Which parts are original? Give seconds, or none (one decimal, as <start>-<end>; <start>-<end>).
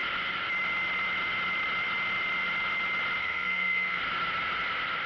0.0-3.2; 4.0-5.1